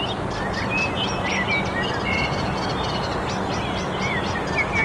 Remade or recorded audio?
recorded